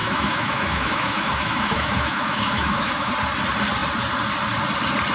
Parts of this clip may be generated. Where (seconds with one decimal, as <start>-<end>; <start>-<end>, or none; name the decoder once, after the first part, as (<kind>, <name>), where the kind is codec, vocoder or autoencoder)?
0.0-3.1 (autoencoder, DAC-VAE)